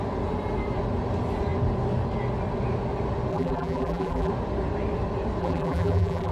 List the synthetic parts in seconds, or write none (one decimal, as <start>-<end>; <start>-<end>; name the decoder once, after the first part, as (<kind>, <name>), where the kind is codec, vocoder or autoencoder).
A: 3.3-4.3 (vocoder, BigVGAN v2); 5.4-6.3